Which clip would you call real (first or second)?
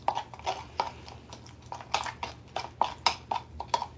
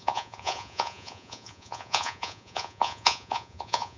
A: first